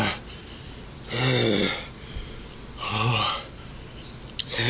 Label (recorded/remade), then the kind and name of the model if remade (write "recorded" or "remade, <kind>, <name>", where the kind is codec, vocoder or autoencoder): recorded